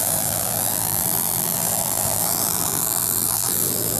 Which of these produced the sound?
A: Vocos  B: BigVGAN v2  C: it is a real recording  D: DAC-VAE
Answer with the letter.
B